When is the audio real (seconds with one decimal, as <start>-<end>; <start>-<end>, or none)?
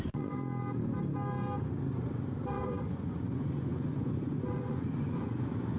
0.4-2.5